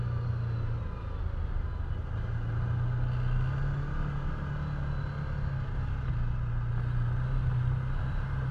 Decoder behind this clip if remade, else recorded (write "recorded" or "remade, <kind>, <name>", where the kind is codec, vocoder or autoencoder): recorded